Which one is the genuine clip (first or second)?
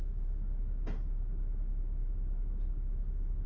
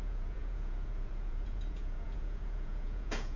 first